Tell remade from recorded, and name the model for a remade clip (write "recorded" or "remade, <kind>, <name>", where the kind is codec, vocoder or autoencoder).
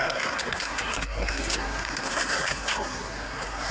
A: remade, codec, SNAC